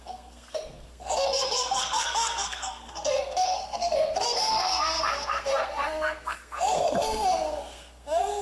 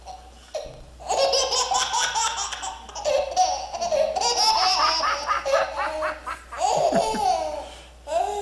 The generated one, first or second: first